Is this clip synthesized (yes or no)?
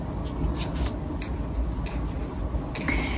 no